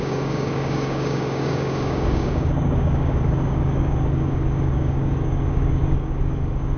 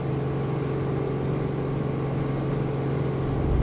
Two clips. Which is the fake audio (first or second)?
first